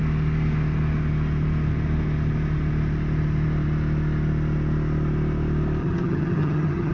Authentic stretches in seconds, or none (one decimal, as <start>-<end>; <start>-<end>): 0.0-5.8